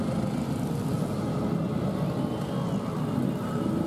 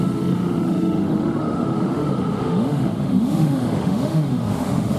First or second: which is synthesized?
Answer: second